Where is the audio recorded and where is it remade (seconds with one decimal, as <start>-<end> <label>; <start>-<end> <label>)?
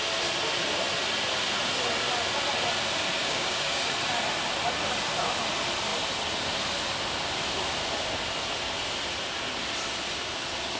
0.0-3.2 recorded; 3.2-3.9 remade; 3.9-10.8 recorded